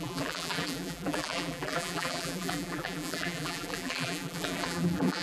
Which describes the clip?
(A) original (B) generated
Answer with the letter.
B